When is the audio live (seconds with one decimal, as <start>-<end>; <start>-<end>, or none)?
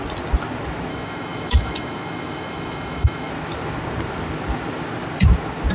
0.0-0.9; 3.3-5.7